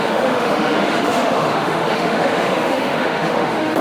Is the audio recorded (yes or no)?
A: no